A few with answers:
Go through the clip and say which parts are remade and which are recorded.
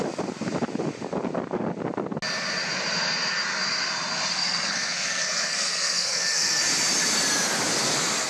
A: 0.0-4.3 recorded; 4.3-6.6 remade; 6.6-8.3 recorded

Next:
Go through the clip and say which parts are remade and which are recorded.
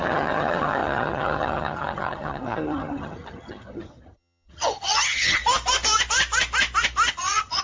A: 0.0-5.4 remade; 5.4-7.1 recorded; 7.1-7.6 remade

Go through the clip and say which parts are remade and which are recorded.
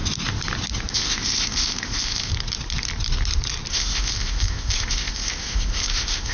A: 0.0-0.9 recorded; 0.9-2.3 remade; 2.3-3.7 recorded; 3.7-6.3 remade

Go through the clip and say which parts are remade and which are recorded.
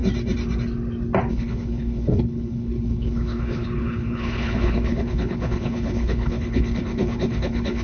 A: 0.0-1.3 recorded; 1.3-7.8 remade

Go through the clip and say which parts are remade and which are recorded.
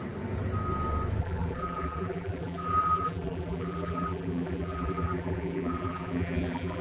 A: 0.0-1.2 recorded; 1.2-6.8 remade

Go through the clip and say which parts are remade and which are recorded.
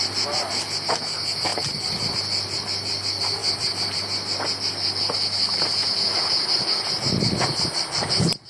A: 0.0-8.5 recorded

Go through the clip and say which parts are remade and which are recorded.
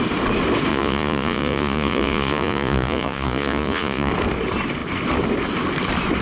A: 0.0-0.7 recorded; 0.7-4.1 remade; 4.1-6.2 recorded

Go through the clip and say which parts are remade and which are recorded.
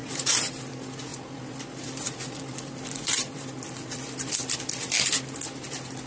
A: 0.0-0.5 remade; 0.5-1.1 recorded; 1.1-4.3 remade; 4.3-6.1 recorded